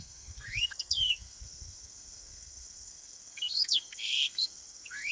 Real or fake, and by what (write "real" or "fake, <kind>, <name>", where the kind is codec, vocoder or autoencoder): fake, codec, SNAC